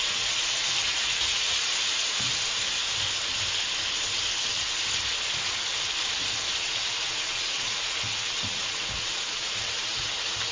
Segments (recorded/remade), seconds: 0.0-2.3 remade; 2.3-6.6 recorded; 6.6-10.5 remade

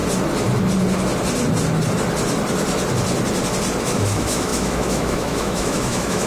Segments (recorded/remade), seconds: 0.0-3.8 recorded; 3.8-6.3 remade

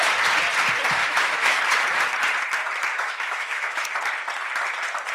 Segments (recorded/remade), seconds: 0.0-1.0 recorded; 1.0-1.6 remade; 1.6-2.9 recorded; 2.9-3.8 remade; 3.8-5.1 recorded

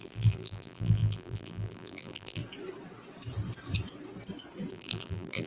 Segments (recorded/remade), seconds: 0.0-2.4 remade; 2.4-4.7 recorded; 4.7-5.5 remade

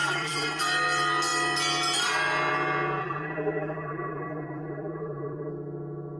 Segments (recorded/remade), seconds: 0.0-0.6 remade; 0.6-3.0 recorded; 3.0-5.5 remade; 5.5-6.2 recorded

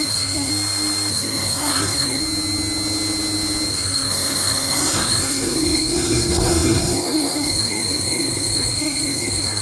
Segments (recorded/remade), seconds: 0.0-0.5 remade; 0.5-1.1 recorded; 1.1-2.2 remade; 2.2-3.7 recorded; 3.7-9.6 remade

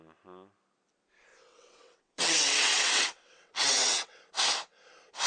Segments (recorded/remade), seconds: 0.0-1.3 recorded; 1.3-4.2 remade; 4.2-5.3 recorded

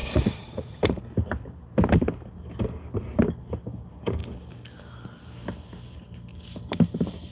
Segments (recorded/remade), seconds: 0.0-1.0 remade; 1.0-7.3 recorded